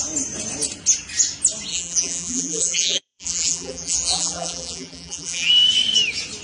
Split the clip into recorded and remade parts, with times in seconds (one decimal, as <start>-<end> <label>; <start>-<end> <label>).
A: 0.0-1.7 recorded; 1.7-5.5 remade; 5.5-6.4 recorded